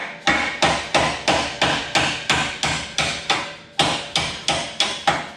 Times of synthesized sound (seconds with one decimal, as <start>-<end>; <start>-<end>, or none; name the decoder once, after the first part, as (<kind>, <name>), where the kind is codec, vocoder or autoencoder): none